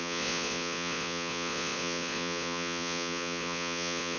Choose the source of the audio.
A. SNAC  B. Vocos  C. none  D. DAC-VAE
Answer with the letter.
B